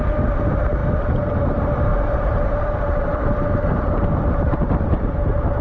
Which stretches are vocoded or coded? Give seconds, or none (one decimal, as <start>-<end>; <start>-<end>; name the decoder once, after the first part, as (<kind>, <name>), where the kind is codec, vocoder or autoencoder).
0.0-5.6 (vocoder, BigVGAN v2)